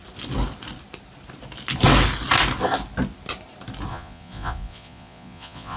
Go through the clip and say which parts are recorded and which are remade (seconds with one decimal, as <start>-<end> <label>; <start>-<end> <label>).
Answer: 0.0-3.9 recorded; 3.9-5.8 remade